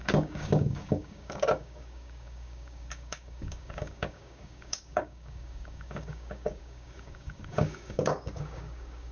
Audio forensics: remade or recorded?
remade